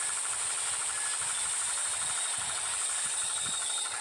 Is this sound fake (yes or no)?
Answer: no